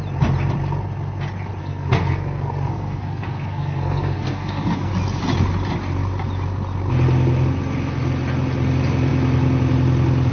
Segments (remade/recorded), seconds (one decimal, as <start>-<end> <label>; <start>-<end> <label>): 0.0-1.6 recorded; 1.6-4.9 remade; 4.9-10.3 recorded